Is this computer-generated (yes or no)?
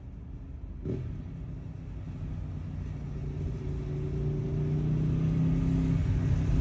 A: no